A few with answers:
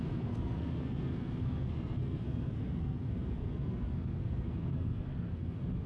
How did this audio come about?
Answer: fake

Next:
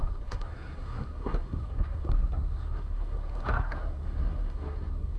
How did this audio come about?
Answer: fake